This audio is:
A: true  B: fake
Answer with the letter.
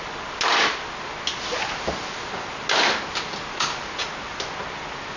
A